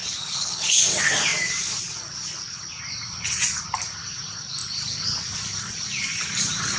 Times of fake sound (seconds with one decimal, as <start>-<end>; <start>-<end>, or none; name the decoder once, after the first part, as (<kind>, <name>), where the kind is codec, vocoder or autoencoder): 0.0-0.8 (codec, HILCodec)